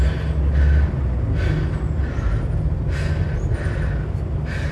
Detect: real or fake real